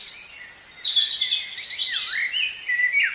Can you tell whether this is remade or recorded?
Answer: recorded